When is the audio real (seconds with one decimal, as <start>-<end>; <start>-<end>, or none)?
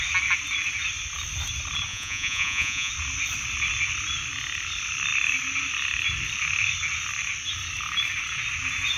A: 0.0-1.9; 2.9-9.0